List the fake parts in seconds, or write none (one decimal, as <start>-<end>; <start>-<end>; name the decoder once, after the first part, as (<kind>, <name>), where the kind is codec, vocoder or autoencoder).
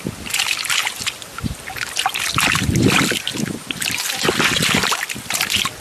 none